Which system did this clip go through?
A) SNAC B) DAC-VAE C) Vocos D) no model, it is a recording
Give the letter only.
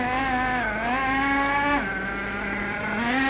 D